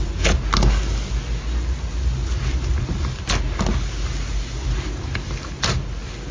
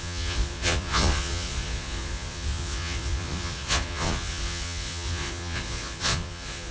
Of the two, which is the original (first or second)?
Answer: first